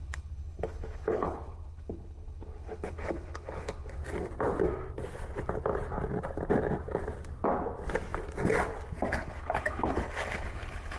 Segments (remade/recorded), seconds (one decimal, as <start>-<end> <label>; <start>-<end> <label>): 0.0-4.0 remade; 4.0-9.1 recorded; 9.1-11.0 remade